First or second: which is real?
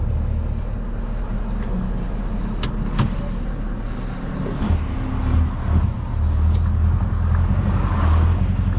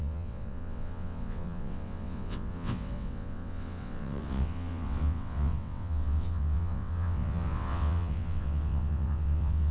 first